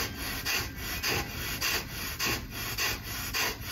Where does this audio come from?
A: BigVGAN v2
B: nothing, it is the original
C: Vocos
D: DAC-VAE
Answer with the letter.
B